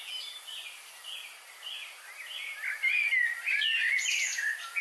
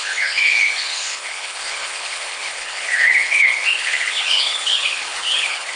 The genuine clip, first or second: first